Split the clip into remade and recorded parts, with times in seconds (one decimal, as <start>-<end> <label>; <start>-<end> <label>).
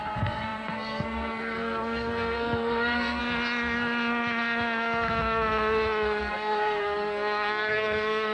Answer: 0.0-3.2 remade; 3.2-6.2 recorded; 6.2-8.3 remade